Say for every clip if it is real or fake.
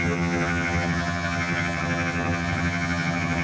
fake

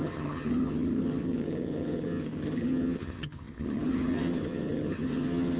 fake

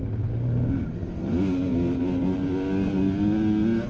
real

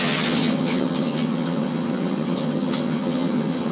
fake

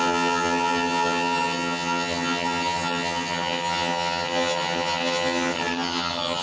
fake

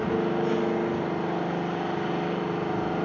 real